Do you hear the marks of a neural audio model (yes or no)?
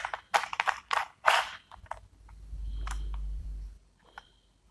yes